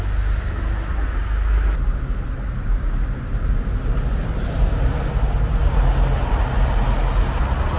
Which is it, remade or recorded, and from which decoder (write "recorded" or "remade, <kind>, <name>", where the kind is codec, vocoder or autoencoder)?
recorded